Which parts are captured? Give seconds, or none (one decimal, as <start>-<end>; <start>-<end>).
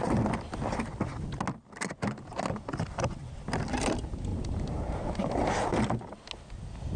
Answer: 0.0-4.3; 5.3-7.0